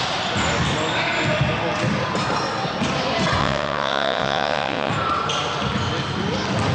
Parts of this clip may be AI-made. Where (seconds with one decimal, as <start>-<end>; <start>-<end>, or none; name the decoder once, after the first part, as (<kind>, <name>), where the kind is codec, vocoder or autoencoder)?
3.4-4.9 (vocoder, WaveNeXt)